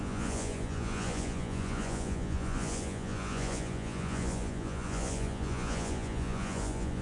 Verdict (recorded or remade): remade